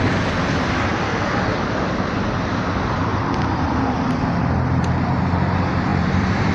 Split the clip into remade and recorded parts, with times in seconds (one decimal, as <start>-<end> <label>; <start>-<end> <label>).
0.0-0.9 recorded; 0.9-1.9 remade; 1.9-3.1 recorded; 3.1-4.4 remade; 4.4-5.9 recorded; 5.9-6.5 remade